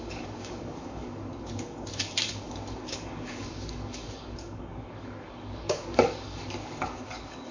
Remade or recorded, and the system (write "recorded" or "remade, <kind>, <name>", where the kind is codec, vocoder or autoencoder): remade, codec, DAC